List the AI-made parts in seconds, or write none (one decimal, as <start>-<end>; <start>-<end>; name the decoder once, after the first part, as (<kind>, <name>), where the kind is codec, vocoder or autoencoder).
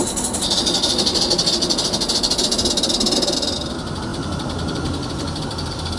none